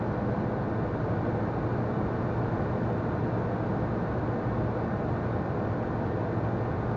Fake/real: real